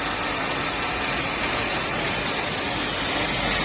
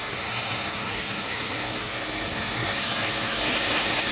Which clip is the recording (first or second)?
first